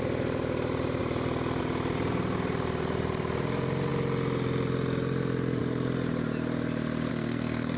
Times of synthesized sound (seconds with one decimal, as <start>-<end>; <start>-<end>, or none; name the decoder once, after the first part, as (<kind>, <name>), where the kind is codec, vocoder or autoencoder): 7.1-7.8 (codec, SNAC)